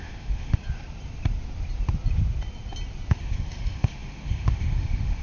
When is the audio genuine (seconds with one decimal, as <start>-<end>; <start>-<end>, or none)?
0.6-3.1